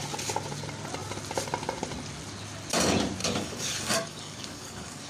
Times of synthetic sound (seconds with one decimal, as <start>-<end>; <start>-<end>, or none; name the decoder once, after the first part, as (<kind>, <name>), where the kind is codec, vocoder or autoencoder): 3.2-5.1 (codec, DAC)